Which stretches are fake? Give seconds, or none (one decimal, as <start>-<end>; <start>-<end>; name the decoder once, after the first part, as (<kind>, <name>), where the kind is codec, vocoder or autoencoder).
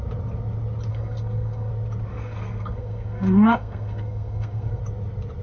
0.9-1.7 (codec, SNAC); 2.1-4.8